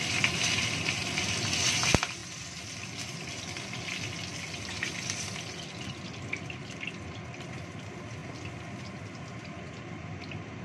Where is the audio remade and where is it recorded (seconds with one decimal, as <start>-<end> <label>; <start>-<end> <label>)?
0.0-10.6 recorded